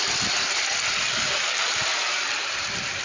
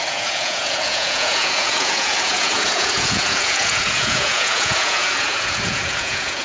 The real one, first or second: first